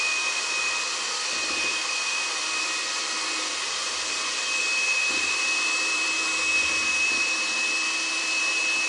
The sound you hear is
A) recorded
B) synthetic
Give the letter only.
B